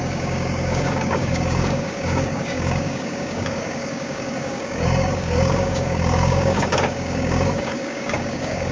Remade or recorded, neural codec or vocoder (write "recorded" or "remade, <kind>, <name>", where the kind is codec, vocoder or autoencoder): remade, codec, DAC